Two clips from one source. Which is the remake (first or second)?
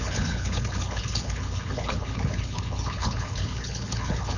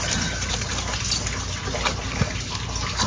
first